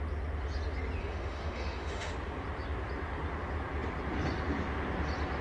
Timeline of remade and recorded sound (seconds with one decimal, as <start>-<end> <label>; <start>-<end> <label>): 0.0-1.0 recorded; 1.0-2.1 remade; 2.1-5.4 recorded